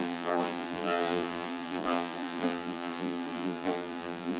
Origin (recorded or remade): remade